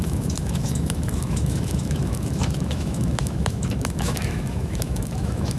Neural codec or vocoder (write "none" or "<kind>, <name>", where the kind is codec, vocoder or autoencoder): autoencoder, DAC-VAE